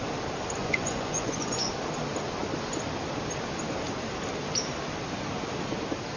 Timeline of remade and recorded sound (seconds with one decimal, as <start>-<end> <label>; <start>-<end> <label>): 0.0-0.6 recorded; 0.6-1.7 remade; 1.7-6.2 recorded